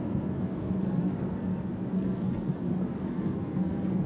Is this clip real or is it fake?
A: fake